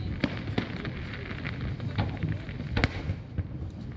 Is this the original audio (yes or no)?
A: yes